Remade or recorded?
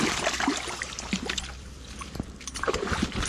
remade